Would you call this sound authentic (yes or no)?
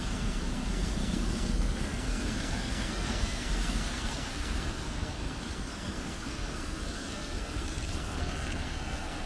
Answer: no